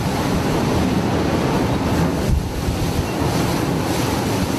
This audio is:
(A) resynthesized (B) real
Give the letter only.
A